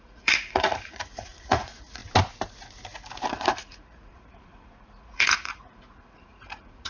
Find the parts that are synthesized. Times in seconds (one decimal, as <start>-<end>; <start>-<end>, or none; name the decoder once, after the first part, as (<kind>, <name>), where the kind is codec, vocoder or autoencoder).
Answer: 0.0-2.0 (vocoder, Vocos); 3.3-6.9